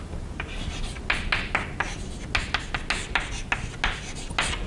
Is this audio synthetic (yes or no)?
no